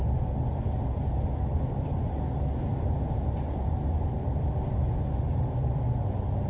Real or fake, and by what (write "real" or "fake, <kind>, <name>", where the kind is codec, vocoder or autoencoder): real